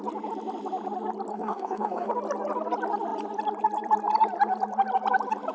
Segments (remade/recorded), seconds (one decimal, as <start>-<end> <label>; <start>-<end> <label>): 0.0-1.3 recorded; 1.3-2.1 remade; 2.1-5.5 recorded